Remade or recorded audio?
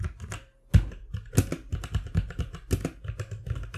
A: recorded